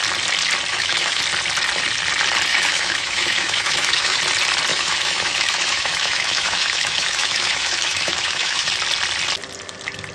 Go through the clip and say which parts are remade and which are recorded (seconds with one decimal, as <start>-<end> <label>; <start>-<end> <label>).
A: 0.0-0.7 recorded; 0.7-1.2 remade; 1.2-2.5 recorded; 2.5-4.2 remade; 4.2-4.7 recorded; 4.7-8.7 remade; 8.7-10.1 recorded